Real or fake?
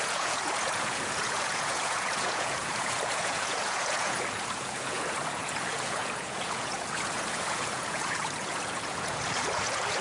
fake